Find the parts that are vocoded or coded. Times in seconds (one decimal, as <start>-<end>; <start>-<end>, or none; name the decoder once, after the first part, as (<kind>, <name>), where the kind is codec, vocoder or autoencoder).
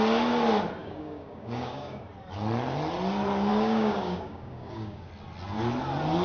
0.8-2.0 (codec, DAC); 3.5-5.1